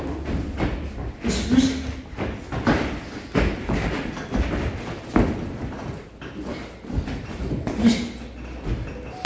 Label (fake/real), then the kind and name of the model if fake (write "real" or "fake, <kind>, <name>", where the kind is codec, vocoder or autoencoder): real